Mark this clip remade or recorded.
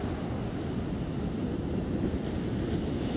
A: recorded